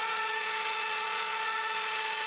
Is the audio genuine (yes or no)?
no